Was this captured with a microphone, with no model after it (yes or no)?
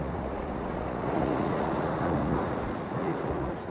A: no